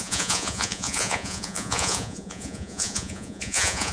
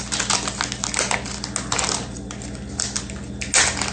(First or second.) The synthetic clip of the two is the first